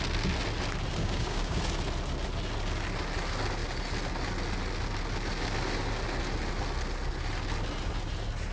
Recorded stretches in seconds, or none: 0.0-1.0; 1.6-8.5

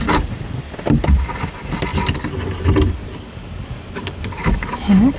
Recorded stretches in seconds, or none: 0.0-3.0

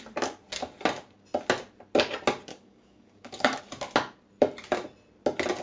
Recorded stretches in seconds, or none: 0.0-2.5; 3.6-5.6

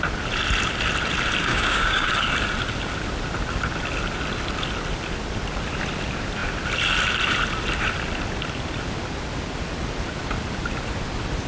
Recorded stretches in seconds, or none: 0.0-1.5; 2.1-11.5

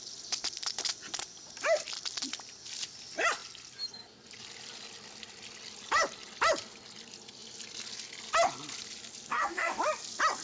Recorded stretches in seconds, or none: 0.0-9.3; 9.8-10.4

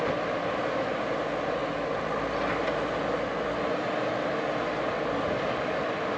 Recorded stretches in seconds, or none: 0.0-6.2